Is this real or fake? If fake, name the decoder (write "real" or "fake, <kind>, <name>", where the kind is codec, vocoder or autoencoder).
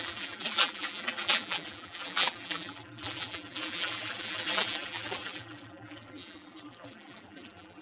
fake, vocoder, BigVGAN v2